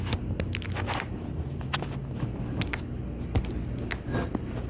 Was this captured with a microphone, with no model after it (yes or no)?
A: yes